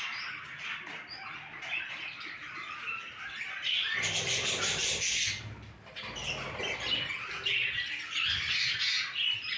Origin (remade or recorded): recorded